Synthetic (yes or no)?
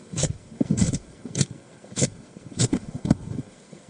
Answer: yes